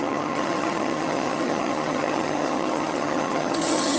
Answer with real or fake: fake